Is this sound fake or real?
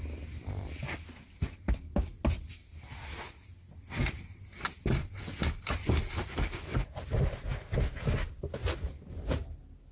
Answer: real